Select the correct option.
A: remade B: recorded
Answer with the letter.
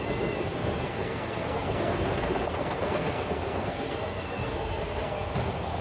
A